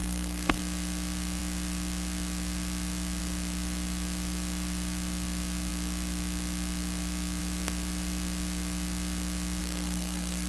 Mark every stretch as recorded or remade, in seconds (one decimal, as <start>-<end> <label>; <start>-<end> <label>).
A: 0.0-0.6 remade; 0.6-9.6 recorded; 9.6-10.5 remade